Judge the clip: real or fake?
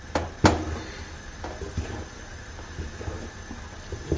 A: real